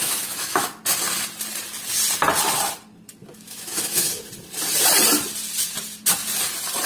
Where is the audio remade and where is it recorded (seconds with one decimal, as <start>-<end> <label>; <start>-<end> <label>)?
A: 0.0-0.8 remade; 0.8-3.2 recorded; 3.2-4.2 remade; 4.2-6.9 recorded